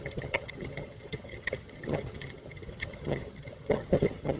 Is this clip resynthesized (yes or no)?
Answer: yes